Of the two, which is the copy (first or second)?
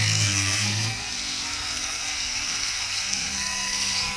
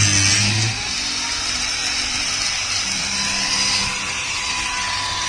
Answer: first